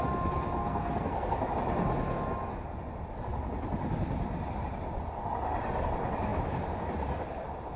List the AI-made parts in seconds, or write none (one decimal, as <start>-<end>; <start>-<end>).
0.6-1.5

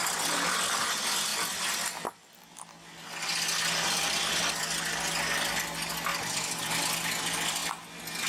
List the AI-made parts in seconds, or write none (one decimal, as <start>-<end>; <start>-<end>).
none

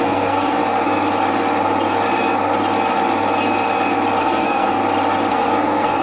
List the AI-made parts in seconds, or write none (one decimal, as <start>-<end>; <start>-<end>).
0.0-0.6; 4.2-4.8; 5.3-6.0

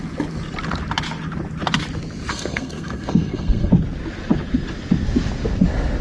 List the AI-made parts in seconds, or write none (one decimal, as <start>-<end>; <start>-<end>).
2.3-3.7

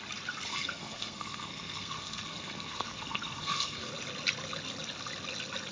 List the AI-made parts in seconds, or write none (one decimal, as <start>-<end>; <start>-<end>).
0.5-3.9